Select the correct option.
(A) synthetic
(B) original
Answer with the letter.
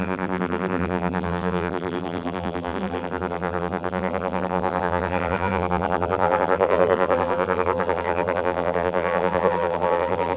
A